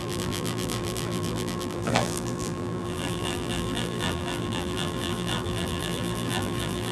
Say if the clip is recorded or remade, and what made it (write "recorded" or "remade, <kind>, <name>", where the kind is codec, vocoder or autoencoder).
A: remade, vocoder, BigVGAN v2